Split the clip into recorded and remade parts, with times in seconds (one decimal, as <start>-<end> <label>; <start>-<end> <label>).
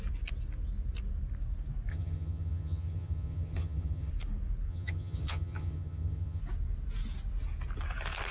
0.0-1.9 recorded; 1.9-4.1 remade; 4.1-4.7 recorded; 4.7-6.4 remade; 6.4-8.3 recorded